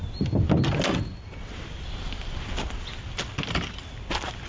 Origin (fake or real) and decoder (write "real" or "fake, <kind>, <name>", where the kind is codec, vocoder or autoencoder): real